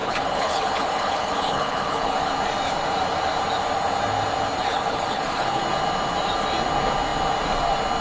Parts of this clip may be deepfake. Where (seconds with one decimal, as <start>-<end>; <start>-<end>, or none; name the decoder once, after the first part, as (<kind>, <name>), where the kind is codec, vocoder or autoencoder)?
0.0-2.3 (codec, HILCodec); 4.6-5.6